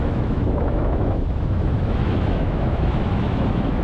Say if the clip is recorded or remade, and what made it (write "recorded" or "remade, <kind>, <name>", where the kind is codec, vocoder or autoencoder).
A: remade, autoencoder, DAC-VAE